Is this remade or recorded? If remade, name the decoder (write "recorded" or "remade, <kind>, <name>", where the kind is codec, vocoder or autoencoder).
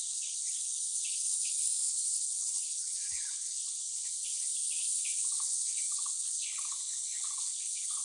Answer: remade, codec, HILCodec